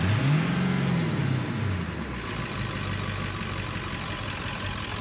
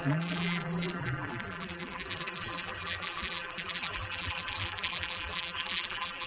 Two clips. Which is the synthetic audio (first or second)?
second